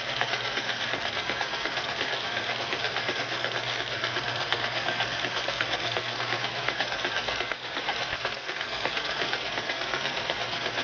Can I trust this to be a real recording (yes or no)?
no